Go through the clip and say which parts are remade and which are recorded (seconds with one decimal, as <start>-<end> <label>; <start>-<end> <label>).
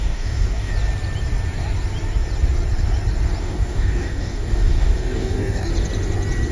0.0-0.7 remade; 0.7-3.4 recorded; 3.4-5.7 remade; 5.7-6.5 recorded